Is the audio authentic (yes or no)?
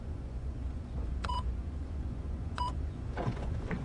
no